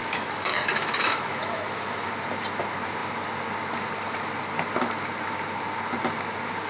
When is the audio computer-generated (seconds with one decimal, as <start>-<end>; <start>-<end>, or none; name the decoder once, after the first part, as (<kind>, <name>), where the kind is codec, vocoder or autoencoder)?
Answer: 0.0-2.1 (autoencoder, DAC-VAE)